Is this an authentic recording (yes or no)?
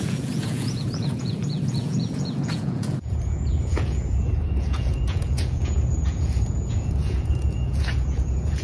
no